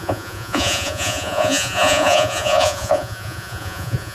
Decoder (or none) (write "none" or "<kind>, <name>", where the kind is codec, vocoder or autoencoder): vocoder, Vocos